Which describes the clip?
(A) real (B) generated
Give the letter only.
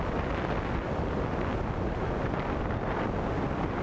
A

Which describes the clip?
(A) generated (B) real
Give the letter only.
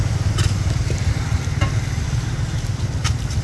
B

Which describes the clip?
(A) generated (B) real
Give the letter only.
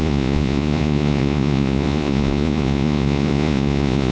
A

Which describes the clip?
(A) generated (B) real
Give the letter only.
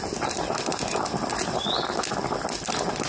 B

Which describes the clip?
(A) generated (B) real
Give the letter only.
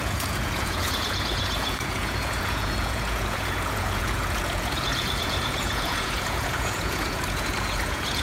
A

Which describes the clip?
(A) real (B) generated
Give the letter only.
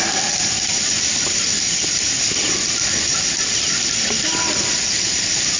A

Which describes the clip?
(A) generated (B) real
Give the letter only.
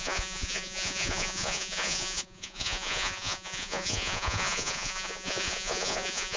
A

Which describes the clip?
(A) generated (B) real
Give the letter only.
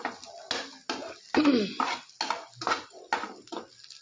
B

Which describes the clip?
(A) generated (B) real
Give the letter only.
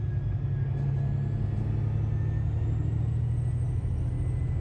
B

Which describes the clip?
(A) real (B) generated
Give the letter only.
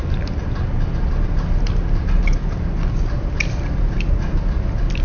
A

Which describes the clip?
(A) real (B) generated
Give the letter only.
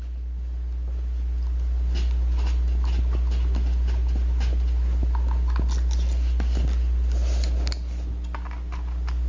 A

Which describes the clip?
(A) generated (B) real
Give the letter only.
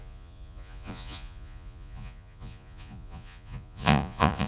A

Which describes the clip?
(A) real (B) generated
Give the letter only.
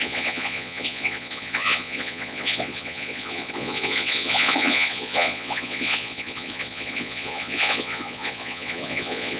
B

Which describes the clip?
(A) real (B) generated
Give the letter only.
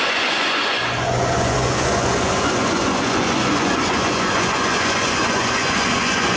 B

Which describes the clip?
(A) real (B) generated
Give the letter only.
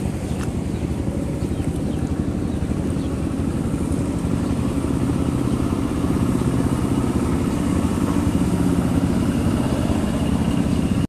A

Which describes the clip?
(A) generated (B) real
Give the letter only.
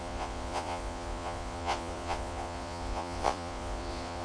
A